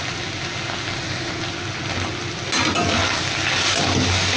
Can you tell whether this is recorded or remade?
recorded